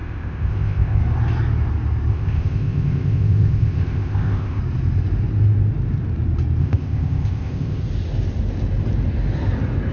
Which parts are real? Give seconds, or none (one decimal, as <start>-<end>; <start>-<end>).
1.0-2.1; 4.6-6.6; 7.8-9.9

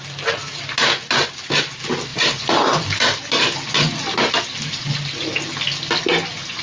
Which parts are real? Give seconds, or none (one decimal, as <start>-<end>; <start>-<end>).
0.0-6.6

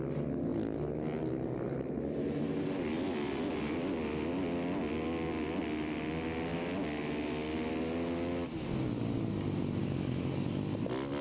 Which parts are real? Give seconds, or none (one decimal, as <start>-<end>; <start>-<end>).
0.0-11.2

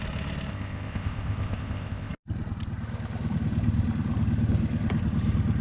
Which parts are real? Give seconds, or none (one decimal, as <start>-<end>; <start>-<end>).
0.0-0.5; 2.1-5.6

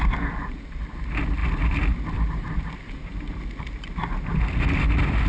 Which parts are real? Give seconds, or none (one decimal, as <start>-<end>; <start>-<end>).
0.0-5.3

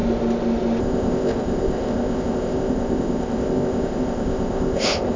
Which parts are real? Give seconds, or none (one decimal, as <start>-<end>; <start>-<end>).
0.0-0.8